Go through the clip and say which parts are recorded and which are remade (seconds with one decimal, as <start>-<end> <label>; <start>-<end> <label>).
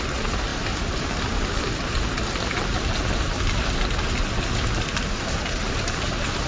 0.0-6.5 recorded